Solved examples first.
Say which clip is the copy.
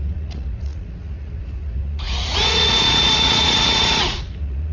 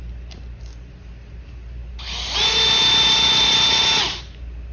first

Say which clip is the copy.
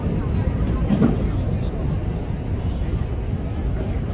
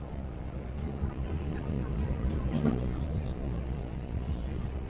second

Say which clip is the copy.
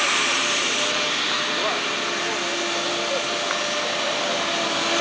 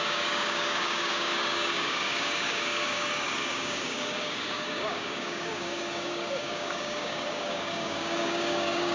second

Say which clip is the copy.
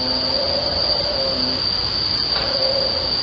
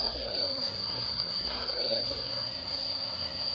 second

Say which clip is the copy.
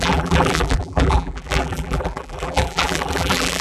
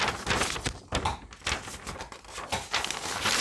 first